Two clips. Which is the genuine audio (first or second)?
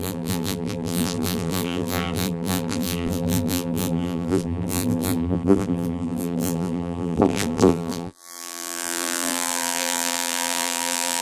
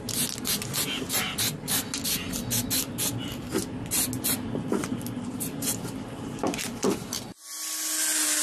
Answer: second